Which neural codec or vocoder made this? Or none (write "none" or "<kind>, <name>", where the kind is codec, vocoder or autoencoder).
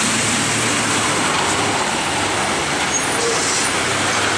vocoder, BigVGAN v2